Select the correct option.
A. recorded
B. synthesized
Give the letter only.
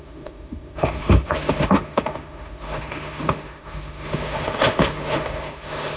B